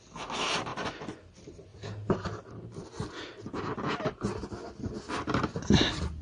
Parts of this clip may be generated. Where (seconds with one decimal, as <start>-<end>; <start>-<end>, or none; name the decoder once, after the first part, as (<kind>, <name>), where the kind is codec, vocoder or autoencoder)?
0.7-1.2 (vocoder, Vocos)